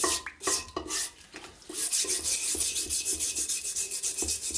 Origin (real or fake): real